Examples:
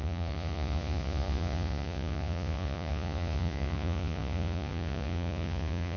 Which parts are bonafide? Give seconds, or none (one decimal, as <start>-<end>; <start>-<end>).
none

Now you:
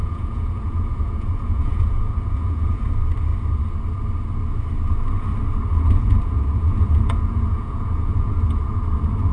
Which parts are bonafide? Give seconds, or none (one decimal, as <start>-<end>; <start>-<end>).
2.9-5.7; 8.8-9.3

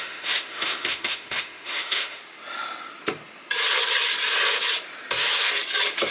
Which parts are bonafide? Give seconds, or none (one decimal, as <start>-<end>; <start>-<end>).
2.2-6.1

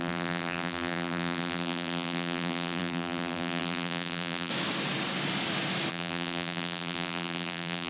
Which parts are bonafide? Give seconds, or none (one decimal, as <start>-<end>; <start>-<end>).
4.5-5.9

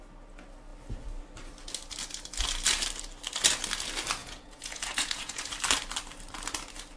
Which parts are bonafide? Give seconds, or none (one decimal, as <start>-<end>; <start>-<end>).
0.0-4.2; 5.4-7.0